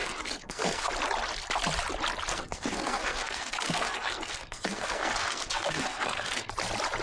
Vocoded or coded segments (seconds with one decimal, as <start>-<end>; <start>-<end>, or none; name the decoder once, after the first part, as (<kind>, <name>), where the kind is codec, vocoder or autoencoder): 0.0-0.9 (codec, SNAC); 2.3-6.5